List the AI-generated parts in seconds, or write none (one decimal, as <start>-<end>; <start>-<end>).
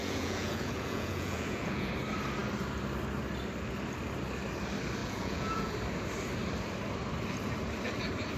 0.0-1.9; 5.0-5.7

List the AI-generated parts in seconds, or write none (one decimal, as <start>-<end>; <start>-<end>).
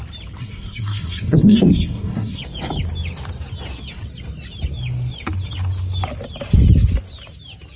0.4-2.4